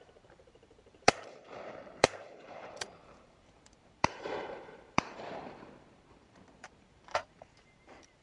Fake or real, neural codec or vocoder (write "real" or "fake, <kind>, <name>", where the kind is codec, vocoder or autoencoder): fake, vocoder, BigVGAN v2